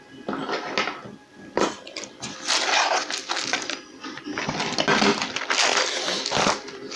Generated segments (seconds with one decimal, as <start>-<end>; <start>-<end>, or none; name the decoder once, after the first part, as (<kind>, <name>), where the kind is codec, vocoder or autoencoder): none